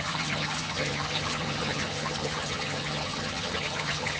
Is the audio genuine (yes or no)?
no